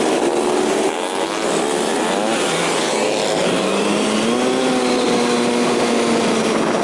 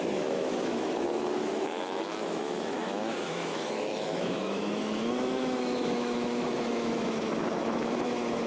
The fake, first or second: second